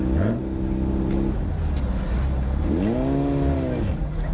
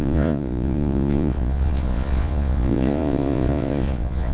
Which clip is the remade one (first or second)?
second